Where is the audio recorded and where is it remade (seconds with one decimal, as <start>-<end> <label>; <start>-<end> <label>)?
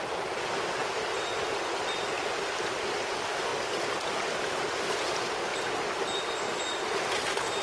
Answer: 0.0-7.6 recorded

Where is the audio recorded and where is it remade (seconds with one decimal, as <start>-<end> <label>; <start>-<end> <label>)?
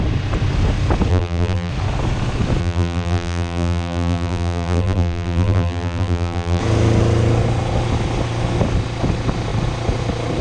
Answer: 0.0-1.1 recorded; 1.1-1.7 remade; 1.7-2.6 recorded; 2.6-6.6 remade; 6.6-10.4 recorded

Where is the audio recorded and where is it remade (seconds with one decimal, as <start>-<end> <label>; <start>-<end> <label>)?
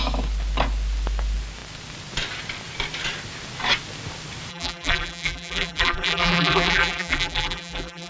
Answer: 0.0-4.5 recorded; 4.5-8.1 remade